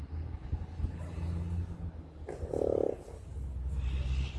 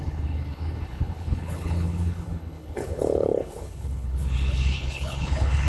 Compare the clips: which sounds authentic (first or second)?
first